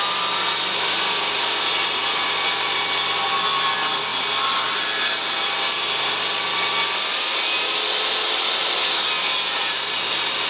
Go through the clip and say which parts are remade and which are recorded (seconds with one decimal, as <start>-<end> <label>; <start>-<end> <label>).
0.0-10.5 recorded